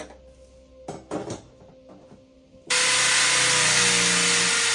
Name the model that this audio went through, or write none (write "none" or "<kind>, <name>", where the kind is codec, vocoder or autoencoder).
none